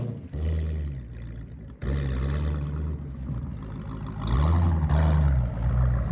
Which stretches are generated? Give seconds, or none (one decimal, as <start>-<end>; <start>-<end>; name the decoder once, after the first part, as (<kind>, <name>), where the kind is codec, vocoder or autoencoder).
none